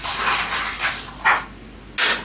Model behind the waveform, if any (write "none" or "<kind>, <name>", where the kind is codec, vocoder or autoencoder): none